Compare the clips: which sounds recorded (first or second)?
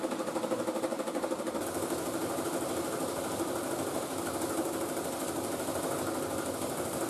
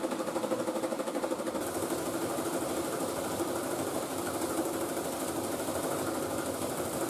first